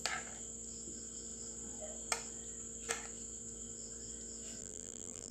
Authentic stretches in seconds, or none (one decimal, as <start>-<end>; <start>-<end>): 0.0-4.6